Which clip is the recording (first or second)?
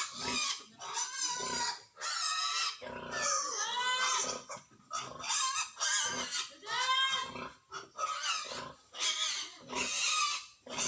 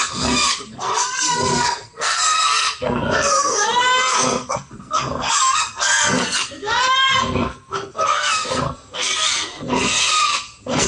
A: first